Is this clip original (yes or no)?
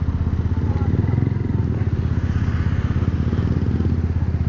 yes